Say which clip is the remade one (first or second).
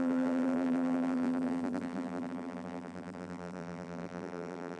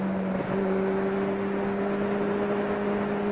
first